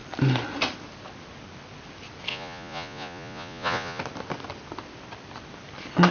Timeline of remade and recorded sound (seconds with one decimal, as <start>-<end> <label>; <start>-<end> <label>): 0.0-2.3 recorded; 2.3-4.0 remade; 4.0-6.1 recorded